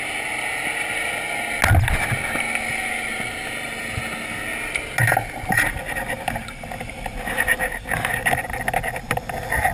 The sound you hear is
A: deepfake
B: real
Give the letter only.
B